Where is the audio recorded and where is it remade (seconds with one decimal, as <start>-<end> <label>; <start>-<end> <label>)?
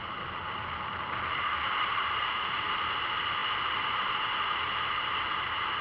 0.0-5.8 recorded